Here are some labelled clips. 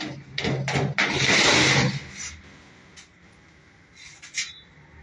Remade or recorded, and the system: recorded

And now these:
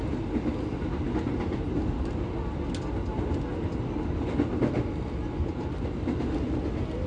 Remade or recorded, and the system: recorded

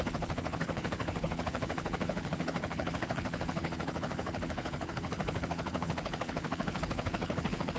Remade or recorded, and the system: remade, codec, HILCodec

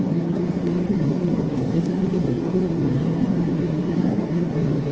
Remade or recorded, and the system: remade, codec, SNAC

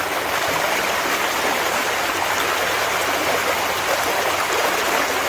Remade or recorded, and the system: recorded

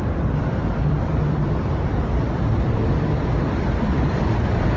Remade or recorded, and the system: remade, vocoder, BigVGAN v2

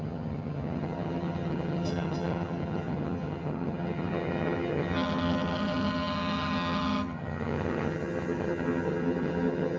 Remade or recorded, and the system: remade, vocoder, HiFi-GAN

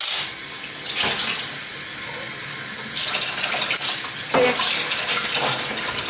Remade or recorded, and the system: recorded